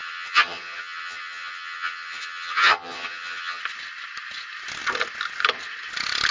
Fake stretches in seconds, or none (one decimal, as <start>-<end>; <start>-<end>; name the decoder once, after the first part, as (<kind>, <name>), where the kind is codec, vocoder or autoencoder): 0.0-3.6 (vocoder, HiFi-GAN)